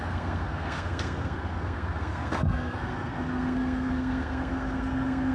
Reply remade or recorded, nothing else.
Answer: remade